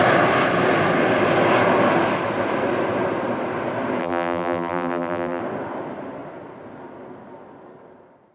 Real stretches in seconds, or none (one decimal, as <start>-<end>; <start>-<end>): 0.0-4.0; 5.4-8.3